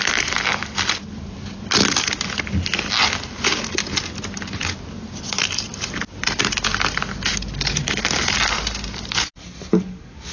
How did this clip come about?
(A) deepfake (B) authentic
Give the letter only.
B